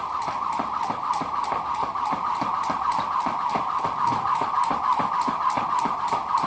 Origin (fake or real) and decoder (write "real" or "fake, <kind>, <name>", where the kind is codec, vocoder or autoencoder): real